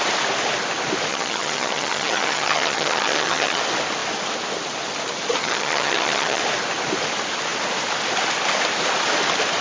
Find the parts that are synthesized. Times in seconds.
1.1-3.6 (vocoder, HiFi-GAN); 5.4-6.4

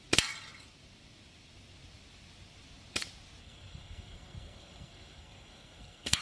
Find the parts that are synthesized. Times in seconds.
3.4-6.2 (codec, SNAC)

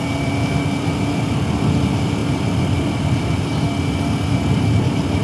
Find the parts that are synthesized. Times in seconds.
none

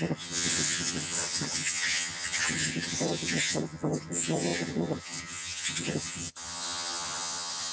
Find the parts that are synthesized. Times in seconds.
0.0-7.7 (vocoder, HiFi-GAN)

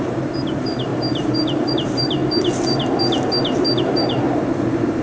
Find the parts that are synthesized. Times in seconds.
0.0-2.2 (vocoder, BigVGAN v2); 3.8-5.0